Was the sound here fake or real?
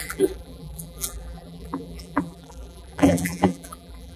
fake